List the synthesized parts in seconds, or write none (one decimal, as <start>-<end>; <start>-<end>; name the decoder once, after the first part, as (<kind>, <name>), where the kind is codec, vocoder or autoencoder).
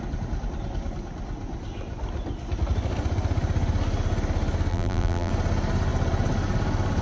4.7-5.3 (vocoder, BigVGAN v2)